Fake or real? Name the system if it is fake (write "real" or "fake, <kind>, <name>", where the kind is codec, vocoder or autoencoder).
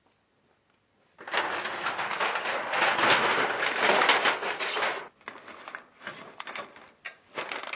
real